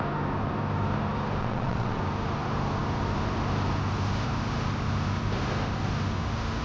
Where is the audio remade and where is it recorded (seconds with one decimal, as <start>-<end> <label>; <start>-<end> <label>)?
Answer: 0.0-1.4 recorded; 1.4-2.0 remade; 2.0-6.6 recorded